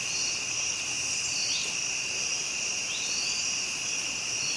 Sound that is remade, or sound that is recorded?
recorded